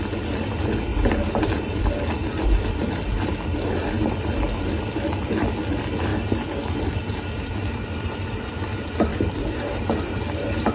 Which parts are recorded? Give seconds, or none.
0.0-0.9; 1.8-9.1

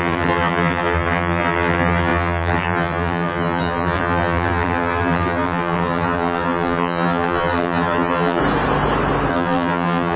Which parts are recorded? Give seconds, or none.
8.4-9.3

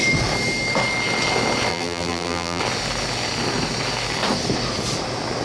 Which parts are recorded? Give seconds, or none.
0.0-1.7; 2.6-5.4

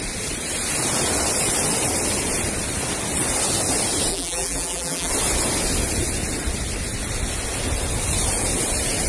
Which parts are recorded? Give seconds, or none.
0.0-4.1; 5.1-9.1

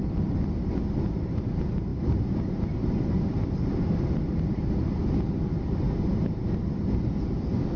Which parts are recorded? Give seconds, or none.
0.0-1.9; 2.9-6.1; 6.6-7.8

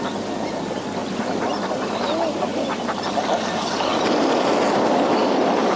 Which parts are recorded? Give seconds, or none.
0.0-1.0; 1.7-2.5; 3.2-3.9; 4.7-5.8